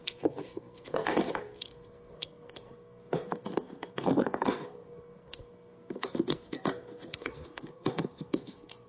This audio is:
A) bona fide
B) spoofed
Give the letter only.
B